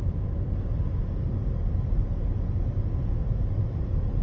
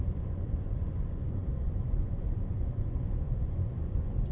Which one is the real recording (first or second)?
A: first